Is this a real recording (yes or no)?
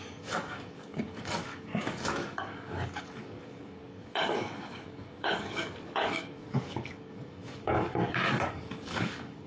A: no